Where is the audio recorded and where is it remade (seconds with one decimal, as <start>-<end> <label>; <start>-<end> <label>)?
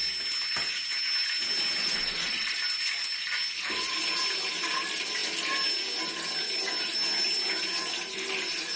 0.0-1.8 recorded; 1.8-2.6 remade; 2.6-8.8 recorded